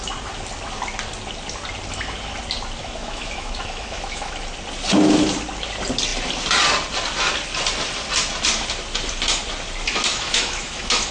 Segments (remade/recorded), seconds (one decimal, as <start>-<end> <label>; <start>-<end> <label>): 0.0-2.8 recorded; 2.8-4.3 remade; 4.3-10.1 recorded; 10.1-11.1 remade